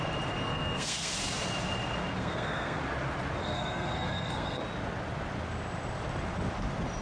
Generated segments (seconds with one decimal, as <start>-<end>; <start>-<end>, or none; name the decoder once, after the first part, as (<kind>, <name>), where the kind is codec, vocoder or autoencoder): 0.5-1.1 (codec, SNAC); 2.2-2.8; 3.4-4.6